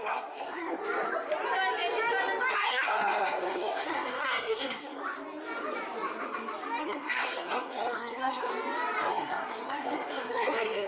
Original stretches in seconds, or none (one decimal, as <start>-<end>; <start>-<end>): 0.8-2.5; 5.0-6.8; 8.5-9.1